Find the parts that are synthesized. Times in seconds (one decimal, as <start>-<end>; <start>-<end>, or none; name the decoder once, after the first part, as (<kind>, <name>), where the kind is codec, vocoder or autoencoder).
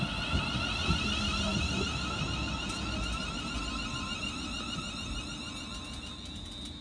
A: none